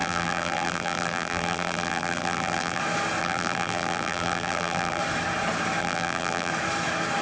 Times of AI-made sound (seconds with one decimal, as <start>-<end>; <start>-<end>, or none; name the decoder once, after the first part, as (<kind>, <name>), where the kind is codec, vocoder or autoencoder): 0.0-2.8 (vocoder, BigVGAN v2); 3.2-5.0; 5.8-6.5